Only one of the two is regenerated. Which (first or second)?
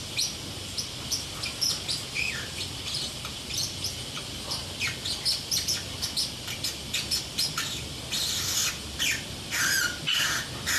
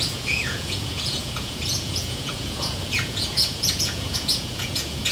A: second